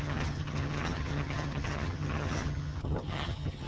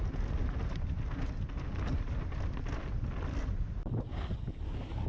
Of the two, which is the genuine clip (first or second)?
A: second